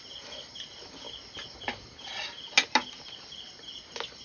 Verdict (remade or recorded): recorded